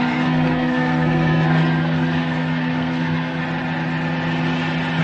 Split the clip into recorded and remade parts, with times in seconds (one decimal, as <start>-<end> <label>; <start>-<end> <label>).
0.0-3.4 remade; 3.4-5.0 recorded